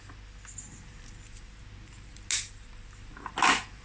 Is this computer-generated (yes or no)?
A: no